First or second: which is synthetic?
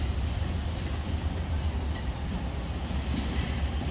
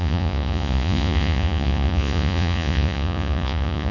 second